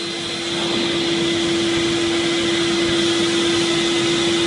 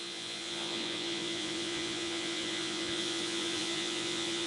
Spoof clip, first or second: second